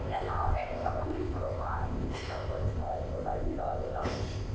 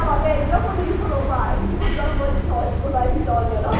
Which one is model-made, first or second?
first